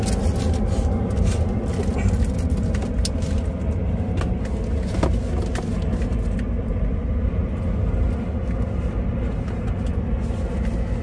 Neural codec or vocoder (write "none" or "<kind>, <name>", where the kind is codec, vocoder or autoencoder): none